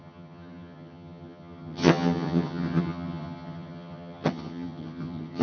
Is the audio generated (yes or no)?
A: yes